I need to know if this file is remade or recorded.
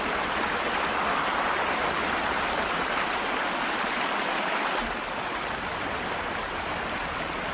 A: recorded